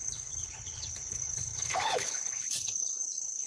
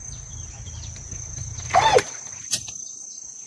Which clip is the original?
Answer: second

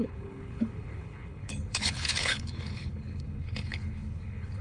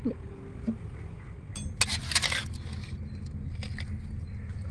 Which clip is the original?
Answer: second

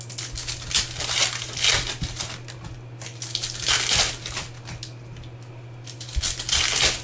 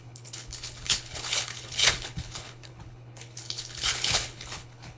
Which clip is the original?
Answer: first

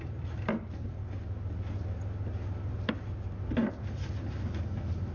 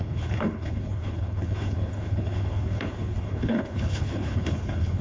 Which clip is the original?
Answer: first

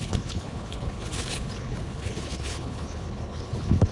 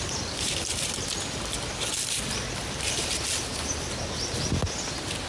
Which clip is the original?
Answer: second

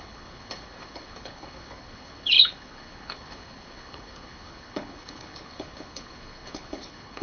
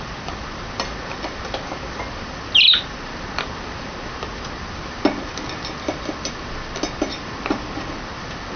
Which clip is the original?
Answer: second